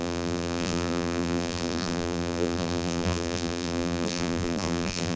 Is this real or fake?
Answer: fake